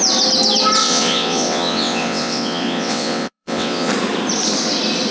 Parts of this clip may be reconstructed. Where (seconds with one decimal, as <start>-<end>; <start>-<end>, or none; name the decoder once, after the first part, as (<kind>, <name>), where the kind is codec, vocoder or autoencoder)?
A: 0.8-3.9 (vocoder, WaveNeXt)